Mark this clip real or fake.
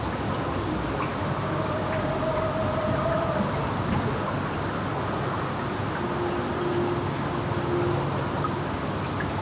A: real